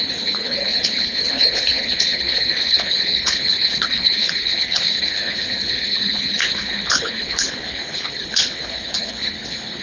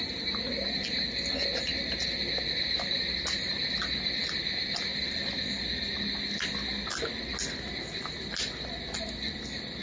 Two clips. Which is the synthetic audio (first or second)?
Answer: first